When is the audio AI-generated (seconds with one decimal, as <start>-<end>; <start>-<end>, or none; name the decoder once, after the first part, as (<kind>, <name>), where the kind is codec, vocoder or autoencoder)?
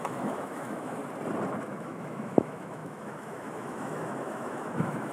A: 0.0-1.0 (autoencoder, DAC-VAE); 1.6-5.1